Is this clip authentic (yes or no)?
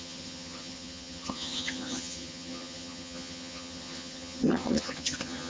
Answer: no